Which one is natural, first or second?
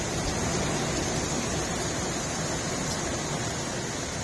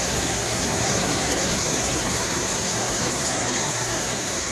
first